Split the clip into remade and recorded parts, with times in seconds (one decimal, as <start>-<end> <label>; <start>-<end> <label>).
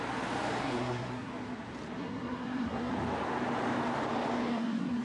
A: 0.0-0.6 recorded; 0.6-1.3 remade; 1.3-2.0 recorded; 2.0-2.9 remade; 2.9-4.5 recorded; 4.5-5.0 remade